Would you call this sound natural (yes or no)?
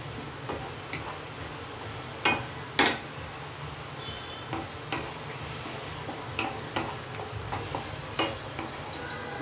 yes